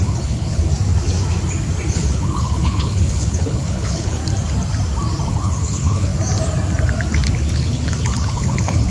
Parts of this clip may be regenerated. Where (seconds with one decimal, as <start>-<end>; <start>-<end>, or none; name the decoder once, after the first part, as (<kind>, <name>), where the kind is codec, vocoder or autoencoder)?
0.0-0.7 (codec, HILCodec); 1.9-4.2; 5.3-6.1; 7.5-8.9